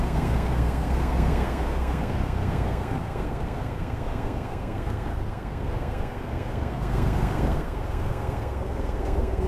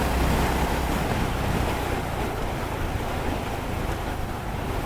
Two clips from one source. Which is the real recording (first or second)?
second